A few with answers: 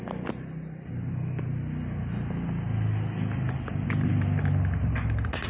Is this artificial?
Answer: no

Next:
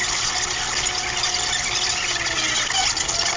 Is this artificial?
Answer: no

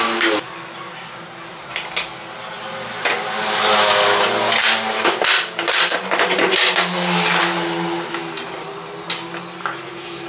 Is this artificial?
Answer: no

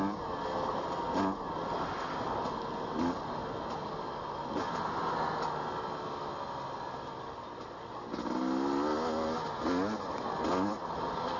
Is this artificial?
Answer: no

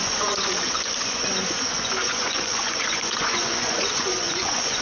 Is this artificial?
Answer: yes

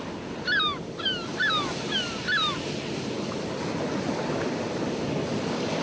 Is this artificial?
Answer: no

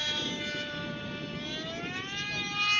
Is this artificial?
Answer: no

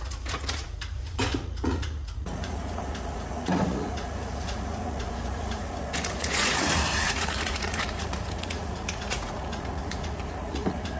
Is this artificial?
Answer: yes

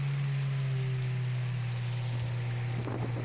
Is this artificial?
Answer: no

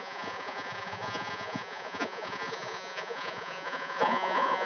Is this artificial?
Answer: yes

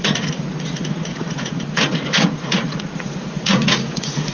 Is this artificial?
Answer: yes